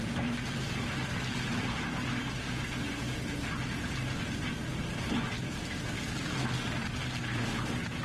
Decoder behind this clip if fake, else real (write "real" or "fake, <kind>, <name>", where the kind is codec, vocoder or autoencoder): real